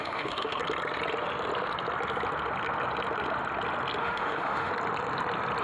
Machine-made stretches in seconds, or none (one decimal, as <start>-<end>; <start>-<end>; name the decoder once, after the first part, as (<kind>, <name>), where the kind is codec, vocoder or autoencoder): 0.0-0.6 (autoencoder, DAC-VAE); 4.0-4.7